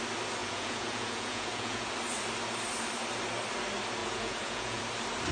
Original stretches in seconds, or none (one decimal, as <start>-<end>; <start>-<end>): 0.0-0.4; 1.9-4.0; 4.8-5.3